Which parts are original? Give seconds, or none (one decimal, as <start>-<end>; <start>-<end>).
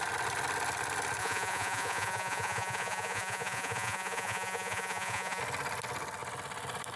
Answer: 0.0-1.2; 5.4-7.0